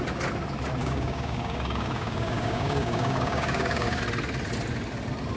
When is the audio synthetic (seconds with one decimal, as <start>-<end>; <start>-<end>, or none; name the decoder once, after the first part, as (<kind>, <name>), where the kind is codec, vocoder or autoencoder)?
0.8-4.0 (codec, DAC)